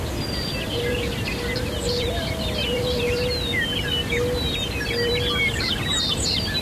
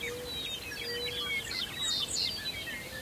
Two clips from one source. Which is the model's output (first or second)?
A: first